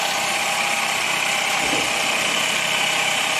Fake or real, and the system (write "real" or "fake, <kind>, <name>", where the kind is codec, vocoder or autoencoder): fake, vocoder, BigVGAN v2